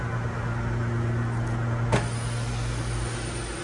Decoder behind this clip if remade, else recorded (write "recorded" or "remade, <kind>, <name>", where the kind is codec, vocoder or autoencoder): recorded